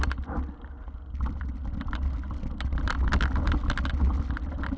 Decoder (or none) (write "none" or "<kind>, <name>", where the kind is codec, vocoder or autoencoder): none